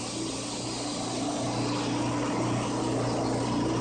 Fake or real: real